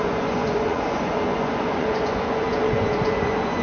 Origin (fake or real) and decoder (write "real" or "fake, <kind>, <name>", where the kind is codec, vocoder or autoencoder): fake, vocoder, Vocos